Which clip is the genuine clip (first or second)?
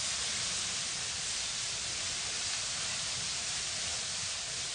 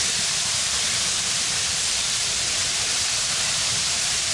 first